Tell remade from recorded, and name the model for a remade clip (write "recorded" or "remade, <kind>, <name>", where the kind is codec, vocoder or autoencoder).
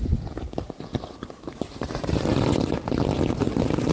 remade, vocoder, BigVGAN v2